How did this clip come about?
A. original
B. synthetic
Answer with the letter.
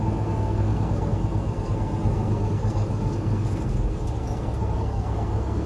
B